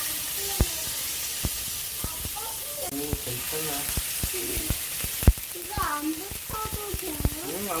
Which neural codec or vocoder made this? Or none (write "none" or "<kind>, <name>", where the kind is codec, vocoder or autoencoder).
none